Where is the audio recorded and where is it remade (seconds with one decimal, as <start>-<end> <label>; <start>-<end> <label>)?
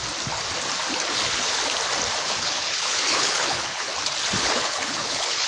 0.0-1.1 recorded; 1.1-1.6 remade; 1.6-2.2 recorded; 2.2-3.9 remade; 3.9-4.4 recorded; 4.4-5.5 remade